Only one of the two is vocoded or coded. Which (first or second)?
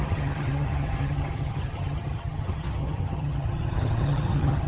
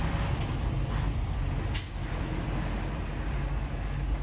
first